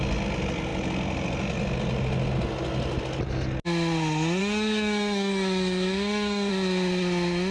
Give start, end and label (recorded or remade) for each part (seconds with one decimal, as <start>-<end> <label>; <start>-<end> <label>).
0.0-4.4 recorded; 4.4-6.5 remade; 6.5-7.5 recorded